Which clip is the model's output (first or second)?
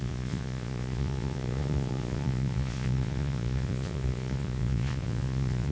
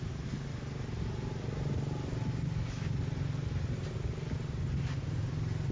first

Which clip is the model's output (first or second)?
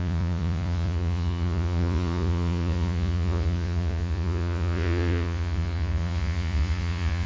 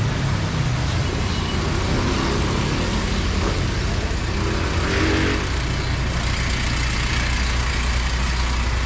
first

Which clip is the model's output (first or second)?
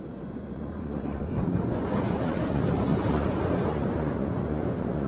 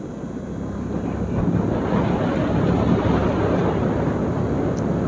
first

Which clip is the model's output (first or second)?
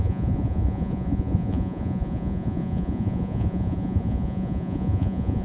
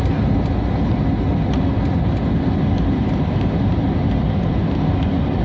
first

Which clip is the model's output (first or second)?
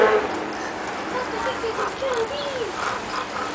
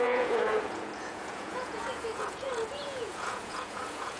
second